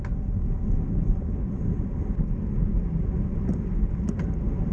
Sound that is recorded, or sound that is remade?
recorded